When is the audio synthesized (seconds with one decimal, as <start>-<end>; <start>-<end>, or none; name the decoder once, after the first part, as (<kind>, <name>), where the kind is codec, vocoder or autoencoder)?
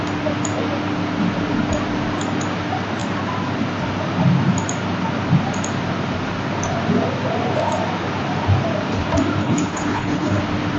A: 9.4-10.4 (codec, HILCodec)